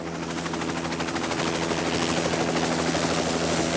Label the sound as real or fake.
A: real